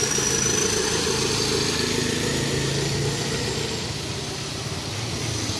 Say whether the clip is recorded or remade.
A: recorded